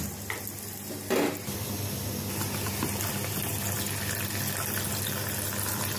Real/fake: real